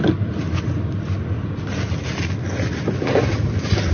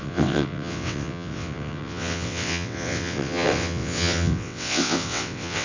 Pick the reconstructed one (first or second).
second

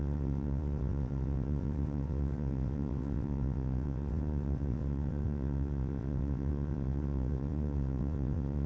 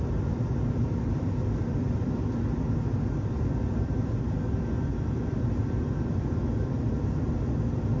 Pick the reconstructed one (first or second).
first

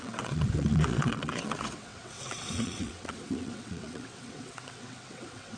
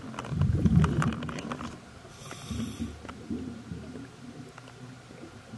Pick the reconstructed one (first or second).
first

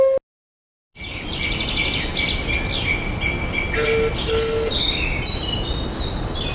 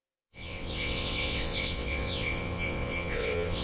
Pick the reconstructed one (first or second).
second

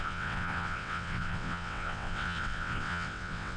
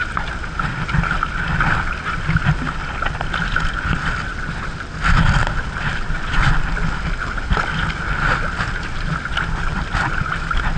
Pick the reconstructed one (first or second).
first